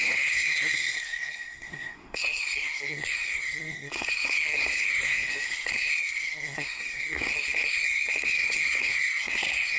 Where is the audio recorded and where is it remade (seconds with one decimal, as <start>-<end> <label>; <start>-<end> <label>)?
0.0-9.8 remade